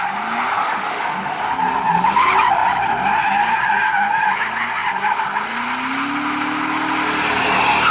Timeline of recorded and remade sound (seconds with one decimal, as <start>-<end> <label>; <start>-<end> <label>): 0.0-0.6 recorded; 0.6-1.4 remade; 1.4-7.9 recorded